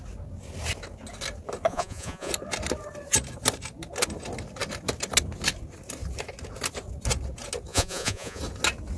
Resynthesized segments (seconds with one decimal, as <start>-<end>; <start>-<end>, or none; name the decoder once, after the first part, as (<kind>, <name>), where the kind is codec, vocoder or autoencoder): 1.7-2.3 (vocoder, Vocos); 7.7-8.4